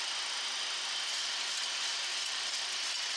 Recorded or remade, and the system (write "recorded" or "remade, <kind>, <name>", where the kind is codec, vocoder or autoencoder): recorded